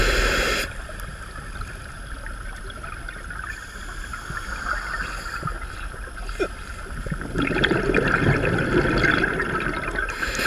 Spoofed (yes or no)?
no